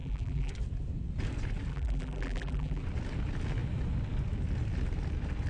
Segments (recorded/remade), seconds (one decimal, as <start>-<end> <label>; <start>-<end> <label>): 0.0-0.5 remade; 0.5-1.7 recorded; 1.7-2.8 remade; 2.8-5.5 recorded